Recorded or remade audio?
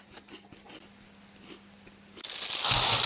recorded